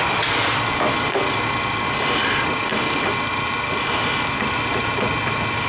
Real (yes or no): yes